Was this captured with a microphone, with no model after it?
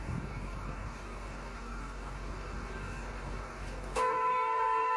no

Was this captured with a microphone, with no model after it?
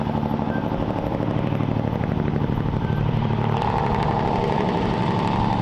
no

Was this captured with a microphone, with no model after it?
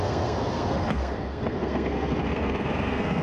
no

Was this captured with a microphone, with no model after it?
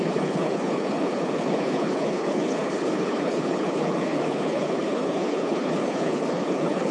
no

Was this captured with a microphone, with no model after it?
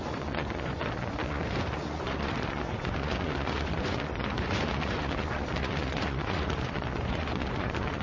no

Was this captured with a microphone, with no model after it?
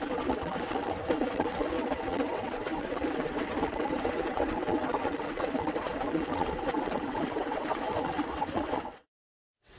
no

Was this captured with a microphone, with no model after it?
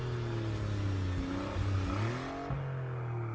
yes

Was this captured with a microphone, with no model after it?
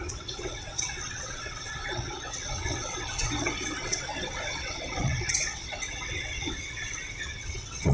no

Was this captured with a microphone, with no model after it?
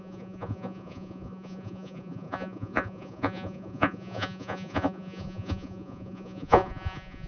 no